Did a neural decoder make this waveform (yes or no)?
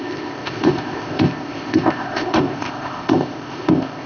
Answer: yes